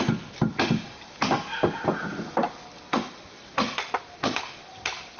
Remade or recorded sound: recorded